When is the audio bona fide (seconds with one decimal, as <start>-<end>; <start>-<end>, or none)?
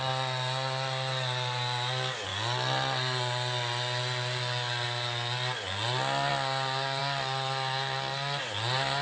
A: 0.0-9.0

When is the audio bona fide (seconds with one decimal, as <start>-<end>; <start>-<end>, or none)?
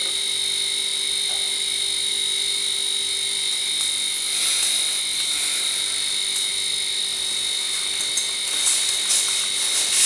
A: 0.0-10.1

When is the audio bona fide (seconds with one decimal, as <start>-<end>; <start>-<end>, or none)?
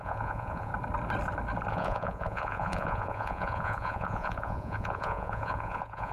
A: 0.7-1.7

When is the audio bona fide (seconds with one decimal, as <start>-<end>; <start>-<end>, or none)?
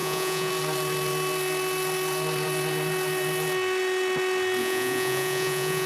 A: 0.5-4.6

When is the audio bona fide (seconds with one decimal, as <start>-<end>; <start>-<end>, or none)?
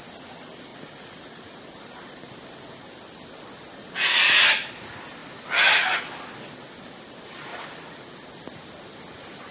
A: 0.0-0.7; 1.6-7.5; 8.1-9.5